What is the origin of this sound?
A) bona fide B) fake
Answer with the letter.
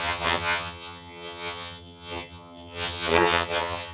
B